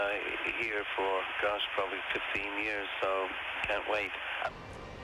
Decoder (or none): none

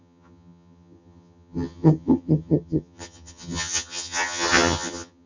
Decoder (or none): vocoder, HiFi-GAN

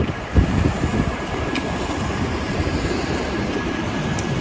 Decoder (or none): vocoder, BigVGAN v2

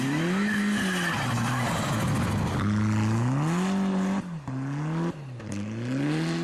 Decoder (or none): none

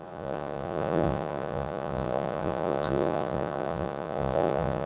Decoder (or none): vocoder, Vocos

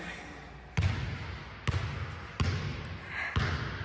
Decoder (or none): none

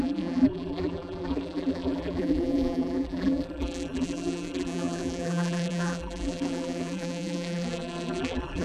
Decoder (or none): vocoder, BigVGAN v2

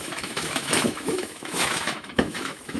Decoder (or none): autoencoder, DAC-VAE